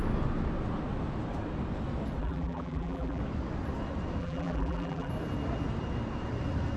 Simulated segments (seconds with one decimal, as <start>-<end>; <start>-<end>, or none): 2.2-3.2; 4.2-5.1